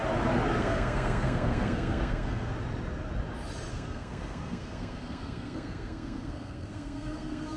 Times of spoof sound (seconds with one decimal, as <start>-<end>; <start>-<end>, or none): 0.6-2.5; 3.7-7.6